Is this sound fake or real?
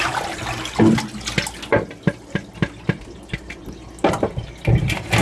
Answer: real